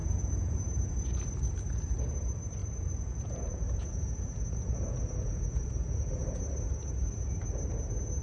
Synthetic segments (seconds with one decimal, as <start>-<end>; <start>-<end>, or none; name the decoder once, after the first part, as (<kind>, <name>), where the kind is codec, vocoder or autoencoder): 0.0-0.6 (vocoder, Vocos); 2.6-6.4